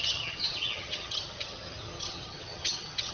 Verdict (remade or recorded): remade